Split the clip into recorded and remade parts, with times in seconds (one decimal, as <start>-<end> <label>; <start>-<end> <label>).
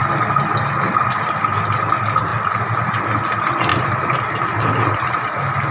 0.0-5.7 recorded